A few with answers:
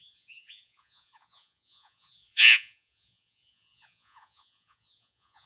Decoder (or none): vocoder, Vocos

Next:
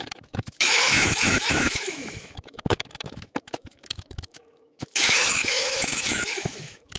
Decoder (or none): autoencoder, DAC-VAE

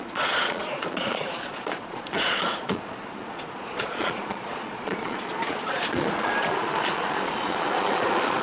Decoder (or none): vocoder, Vocos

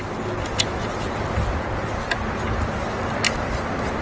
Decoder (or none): none